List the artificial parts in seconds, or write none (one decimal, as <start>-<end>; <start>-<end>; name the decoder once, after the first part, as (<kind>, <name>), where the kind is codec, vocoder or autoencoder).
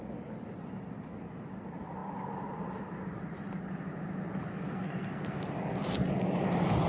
4.5-5.4 (codec, SNAC)